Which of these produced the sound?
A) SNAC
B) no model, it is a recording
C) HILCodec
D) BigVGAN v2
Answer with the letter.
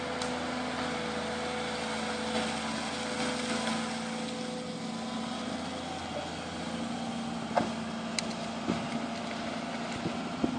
B